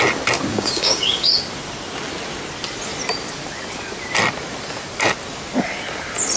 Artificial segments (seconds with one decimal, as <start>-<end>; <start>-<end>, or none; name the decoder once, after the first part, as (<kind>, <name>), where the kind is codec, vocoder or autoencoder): 0.5-1.4 (codec, DAC)

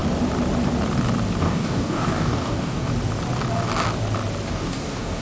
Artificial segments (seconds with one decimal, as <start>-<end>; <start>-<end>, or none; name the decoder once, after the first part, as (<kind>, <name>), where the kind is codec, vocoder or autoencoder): 1.4-2.9 (codec, DAC); 4.5-5.2